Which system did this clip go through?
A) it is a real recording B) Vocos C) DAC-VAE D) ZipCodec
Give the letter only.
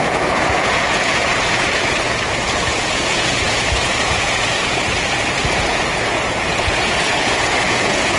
B